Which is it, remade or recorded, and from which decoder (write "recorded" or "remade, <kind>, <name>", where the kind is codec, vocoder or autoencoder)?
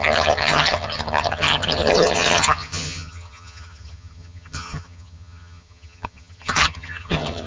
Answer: remade, vocoder, HiFi-GAN